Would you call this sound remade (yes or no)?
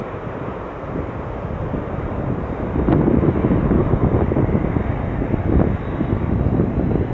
no